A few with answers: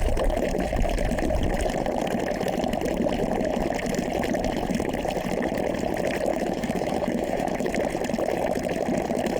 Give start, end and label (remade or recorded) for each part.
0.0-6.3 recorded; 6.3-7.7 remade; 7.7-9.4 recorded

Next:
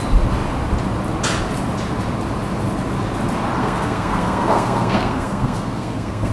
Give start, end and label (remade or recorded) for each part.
0.0-3.6 recorded; 3.6-6.3 remade

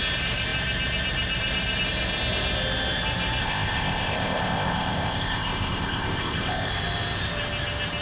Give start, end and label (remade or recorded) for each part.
0.0-3.4 recorded; 3.4-6.7 remade; 6.7-8.0 recorded

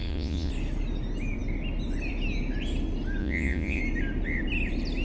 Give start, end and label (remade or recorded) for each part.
0.0-0.5 remade; 0.5-3.2 recorded; 3.2-3.8 remade; 3.8-5.0 recorded

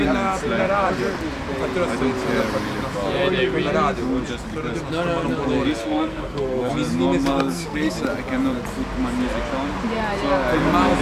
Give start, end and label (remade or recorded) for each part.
0.0-5.8 recorded; 5.8-6.7 remade; 6.7-7.3 recorded; 7.3-7.9 remade; 7.9-11.0 recorded